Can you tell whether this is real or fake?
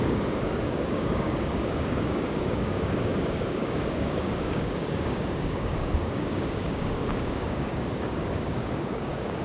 fake